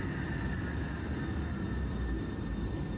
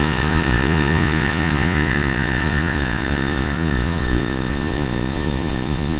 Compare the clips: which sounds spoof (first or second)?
second